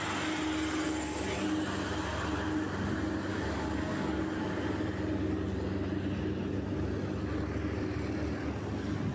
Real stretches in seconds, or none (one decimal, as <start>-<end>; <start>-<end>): 0.0-3.3; 4.2-9.1